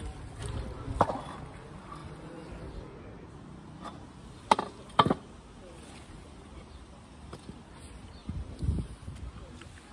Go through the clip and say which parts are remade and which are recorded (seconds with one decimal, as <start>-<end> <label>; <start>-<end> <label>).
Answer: 0.0-8.2 recorded; 8.2-8.9 remade; 8.9-9.9 recorded